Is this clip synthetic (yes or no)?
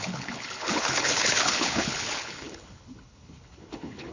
yes